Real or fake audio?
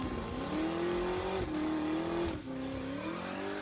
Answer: real